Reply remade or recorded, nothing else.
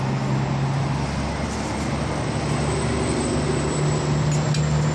recorded